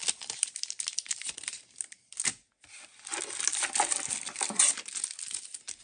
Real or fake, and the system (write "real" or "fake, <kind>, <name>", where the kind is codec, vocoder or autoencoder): real